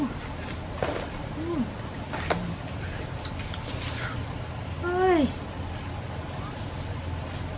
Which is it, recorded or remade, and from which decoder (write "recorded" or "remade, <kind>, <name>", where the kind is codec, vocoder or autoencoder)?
recorded